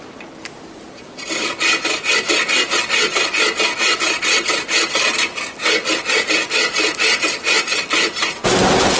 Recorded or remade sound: recorded